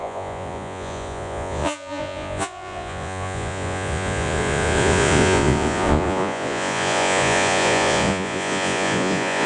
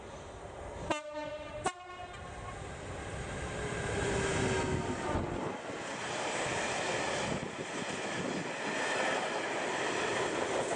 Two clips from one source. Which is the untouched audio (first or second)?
second